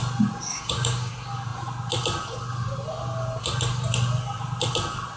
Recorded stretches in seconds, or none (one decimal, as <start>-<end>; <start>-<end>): 0.0-0.5; 1.1-5.2